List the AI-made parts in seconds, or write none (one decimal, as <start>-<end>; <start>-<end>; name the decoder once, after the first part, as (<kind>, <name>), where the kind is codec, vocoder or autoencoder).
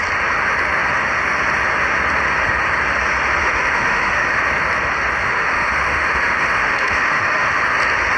3.4-4.4 (autoencoder, DAC-VAE); 5.2-7.6